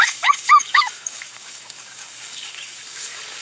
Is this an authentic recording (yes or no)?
no